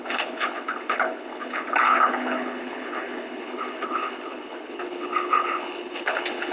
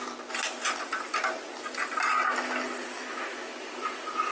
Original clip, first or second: second